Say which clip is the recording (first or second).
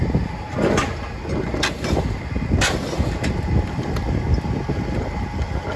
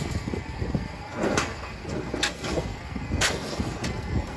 first